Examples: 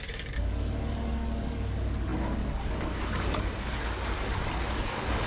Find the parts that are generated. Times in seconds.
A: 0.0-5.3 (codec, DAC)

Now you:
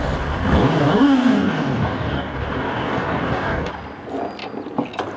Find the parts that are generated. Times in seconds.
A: 0.6-3.7 (codec, DAC)

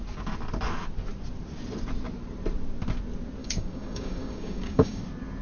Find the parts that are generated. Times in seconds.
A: 3.4-5.0 (codec, DAC)

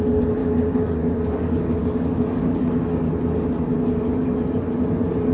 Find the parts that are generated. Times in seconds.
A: 0.4-1.4 (codec, DAC); 1.8-3.1

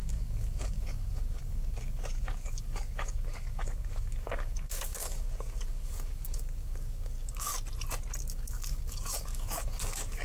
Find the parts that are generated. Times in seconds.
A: 0.0-7.5 (codec, DAC); 8.2-10.2

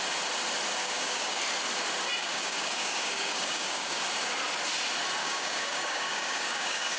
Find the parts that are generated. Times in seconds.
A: 0.8-1.4 (codec, DAC); 2.2-4.0; 5.2-7.0